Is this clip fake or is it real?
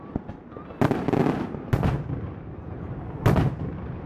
real